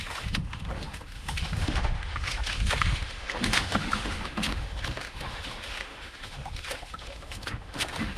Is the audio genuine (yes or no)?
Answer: no